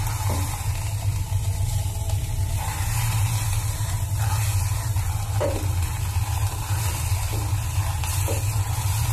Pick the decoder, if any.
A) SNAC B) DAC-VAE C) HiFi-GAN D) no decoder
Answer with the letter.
D